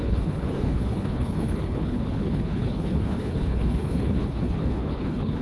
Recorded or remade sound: remade